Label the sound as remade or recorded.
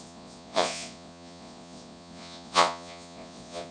remade